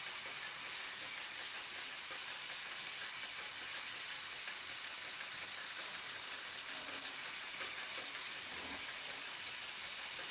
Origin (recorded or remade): recorded